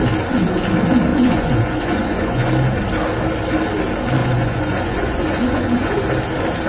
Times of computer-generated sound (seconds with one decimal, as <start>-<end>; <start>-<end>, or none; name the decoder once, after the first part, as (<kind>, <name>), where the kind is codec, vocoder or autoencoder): 1.1-2.5 (vocoder, Vocos); 4.2-6.0